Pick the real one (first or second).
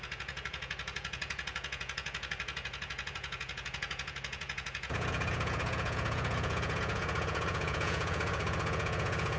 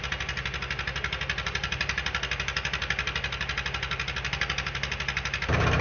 second